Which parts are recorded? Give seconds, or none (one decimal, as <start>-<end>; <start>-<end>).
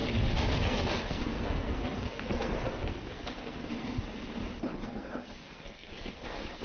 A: 4.0-4.8